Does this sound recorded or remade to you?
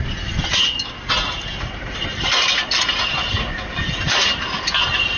recorded